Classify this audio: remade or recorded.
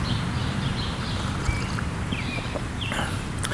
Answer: remade